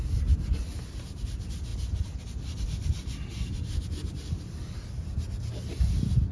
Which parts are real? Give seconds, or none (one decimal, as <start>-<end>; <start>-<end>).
0.0-6.3